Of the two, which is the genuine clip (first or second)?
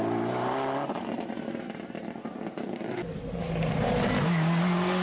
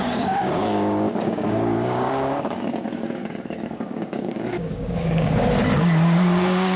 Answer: first